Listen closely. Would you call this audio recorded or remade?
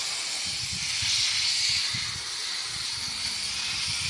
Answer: recorded